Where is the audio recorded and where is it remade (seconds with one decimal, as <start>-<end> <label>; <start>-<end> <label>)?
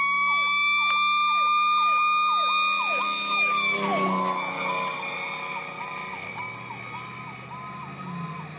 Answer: 0.0-8.6 recorded